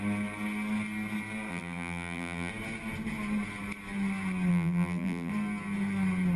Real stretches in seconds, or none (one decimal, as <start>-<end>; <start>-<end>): 0.0-1.5; 2.5-4.5; 5.3-6.4